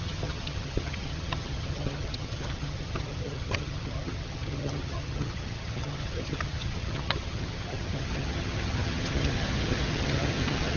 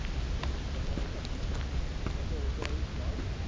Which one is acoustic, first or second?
second